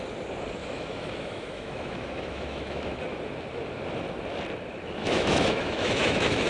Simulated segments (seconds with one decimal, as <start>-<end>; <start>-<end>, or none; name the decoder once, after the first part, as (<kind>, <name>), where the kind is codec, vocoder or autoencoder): 0.6-3.0 (autoencoder, DAC-VAE); 5.0-6.5